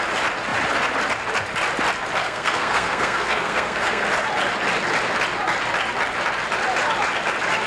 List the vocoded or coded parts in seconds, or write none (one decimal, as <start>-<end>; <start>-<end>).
2.2-4.0